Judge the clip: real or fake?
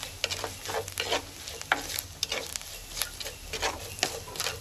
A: real